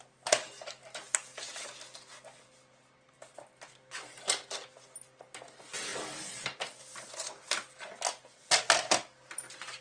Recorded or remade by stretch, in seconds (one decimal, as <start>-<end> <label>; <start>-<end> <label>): 0.0-9.8 recorded